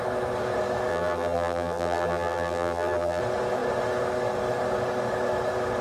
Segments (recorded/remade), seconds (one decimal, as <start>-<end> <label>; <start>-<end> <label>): 0.0-0.9 recorded; 0.9-3.2 remade; 3.2-5.8 recorded